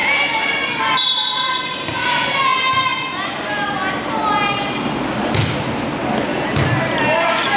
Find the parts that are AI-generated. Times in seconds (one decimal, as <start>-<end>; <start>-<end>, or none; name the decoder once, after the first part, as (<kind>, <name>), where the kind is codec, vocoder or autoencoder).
none